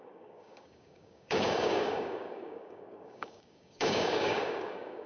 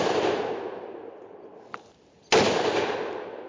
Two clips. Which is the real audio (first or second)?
second